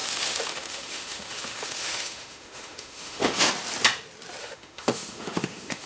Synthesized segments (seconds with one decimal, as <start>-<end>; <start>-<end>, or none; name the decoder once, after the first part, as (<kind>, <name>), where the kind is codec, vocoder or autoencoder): 0.0-3.5 (autoencoder, DAC-VAE); 4.4-5.9